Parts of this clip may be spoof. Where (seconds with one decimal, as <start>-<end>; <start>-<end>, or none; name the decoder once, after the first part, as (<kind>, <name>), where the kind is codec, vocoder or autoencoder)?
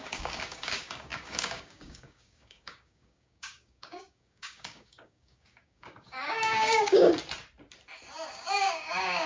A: 0.0-7.1 (codec, DAC); 8.3-9.3